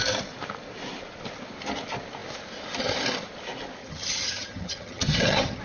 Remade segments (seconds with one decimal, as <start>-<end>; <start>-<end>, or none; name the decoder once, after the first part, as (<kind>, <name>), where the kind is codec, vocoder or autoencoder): 3.8-5.6 (vocoder, HiFi-GAN)